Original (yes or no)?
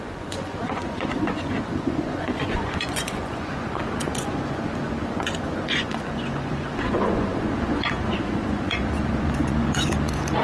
no